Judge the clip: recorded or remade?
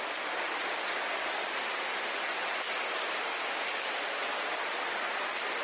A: remade